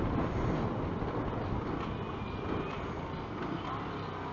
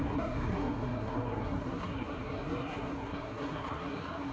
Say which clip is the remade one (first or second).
second